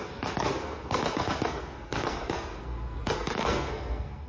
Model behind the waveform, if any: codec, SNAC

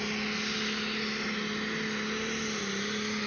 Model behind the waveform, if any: none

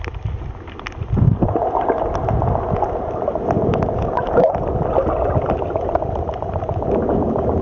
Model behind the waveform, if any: none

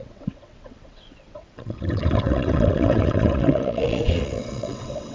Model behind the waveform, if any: vocoder, WaveNeXt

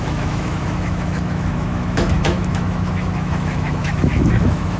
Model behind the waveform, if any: autoencoder, DAC-VAE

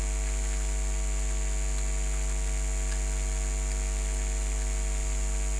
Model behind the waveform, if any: none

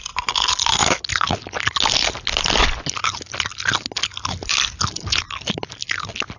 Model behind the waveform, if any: none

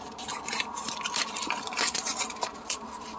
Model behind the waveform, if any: none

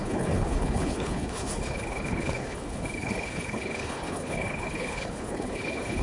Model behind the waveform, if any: codec, HILCodec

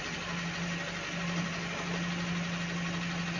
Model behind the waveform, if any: none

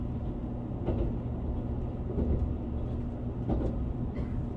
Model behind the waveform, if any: none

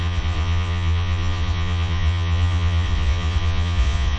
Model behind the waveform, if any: vocoder, Vocos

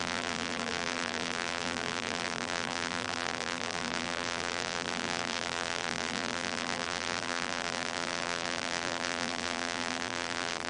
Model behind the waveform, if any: vocoder, BigVGAN v2